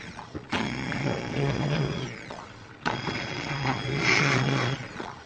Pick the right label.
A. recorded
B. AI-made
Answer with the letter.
B